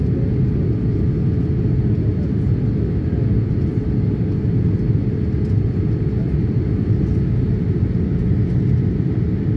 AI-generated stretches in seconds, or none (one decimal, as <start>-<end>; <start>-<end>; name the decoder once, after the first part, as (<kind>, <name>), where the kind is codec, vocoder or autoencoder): none